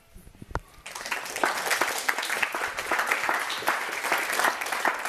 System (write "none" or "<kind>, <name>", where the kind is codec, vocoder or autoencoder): none